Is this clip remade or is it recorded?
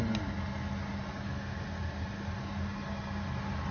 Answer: recorded